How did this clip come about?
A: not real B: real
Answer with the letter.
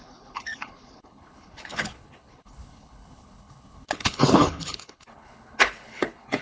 A